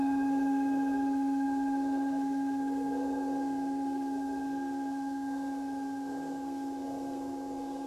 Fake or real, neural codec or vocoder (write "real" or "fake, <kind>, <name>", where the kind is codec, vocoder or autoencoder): fake, codec, SNAC